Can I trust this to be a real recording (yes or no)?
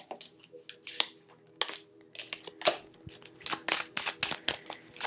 yes